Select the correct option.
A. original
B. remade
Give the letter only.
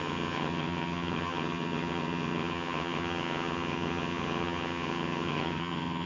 B